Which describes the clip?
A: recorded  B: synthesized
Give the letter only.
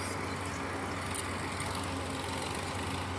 A